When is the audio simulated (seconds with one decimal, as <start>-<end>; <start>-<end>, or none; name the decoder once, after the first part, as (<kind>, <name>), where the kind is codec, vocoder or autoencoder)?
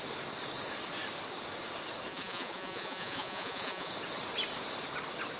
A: 2.1-3.9 (vocoder, Vocos)